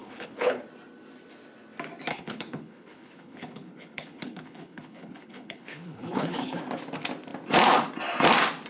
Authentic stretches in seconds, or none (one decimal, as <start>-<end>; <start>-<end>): 0.6-2.1; 6.6-8.7